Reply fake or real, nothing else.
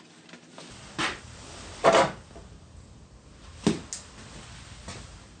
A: real